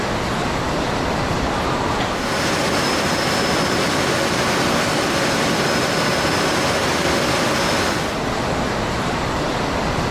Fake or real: fake